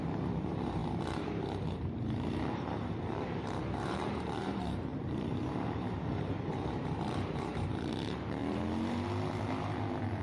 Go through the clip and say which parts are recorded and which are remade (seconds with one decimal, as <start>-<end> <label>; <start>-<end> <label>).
0.0-8.4 remade; 8.4-10.2 recorded